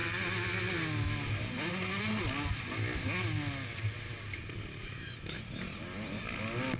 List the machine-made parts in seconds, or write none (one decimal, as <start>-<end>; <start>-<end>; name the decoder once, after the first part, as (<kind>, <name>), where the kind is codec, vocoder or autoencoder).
4.8-5.4 (autoencoder, DAC-VAE)